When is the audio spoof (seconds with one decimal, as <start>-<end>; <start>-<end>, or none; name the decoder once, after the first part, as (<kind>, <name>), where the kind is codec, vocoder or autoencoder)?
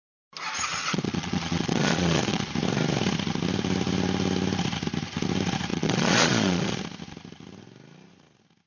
0.7-2.5 (vocoder, Vocos); 5.7-6.8